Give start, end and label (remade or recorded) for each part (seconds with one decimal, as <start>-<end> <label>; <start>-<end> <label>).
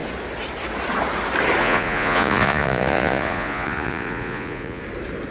0.0-1.6 recorded; 1.6-4.8 remade; 4.8-5.3 recorded